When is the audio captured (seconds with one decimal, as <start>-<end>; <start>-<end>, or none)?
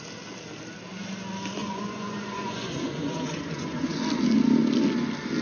0.0-1.6; 4.0-5.4